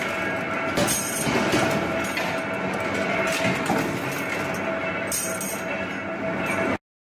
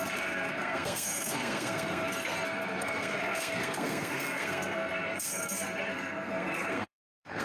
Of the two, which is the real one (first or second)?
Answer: first